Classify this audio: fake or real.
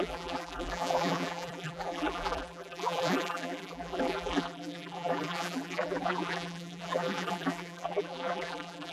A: fake